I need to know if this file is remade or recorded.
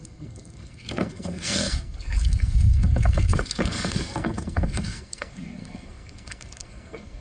remade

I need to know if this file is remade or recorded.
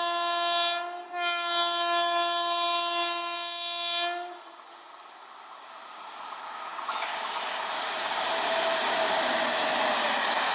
recorded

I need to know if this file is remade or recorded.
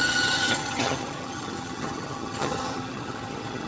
remade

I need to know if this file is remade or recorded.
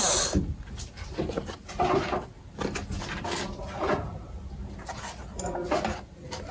recorded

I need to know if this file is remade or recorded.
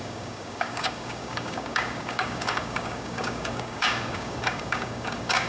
remade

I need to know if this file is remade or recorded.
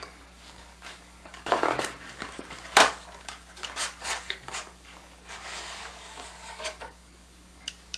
remade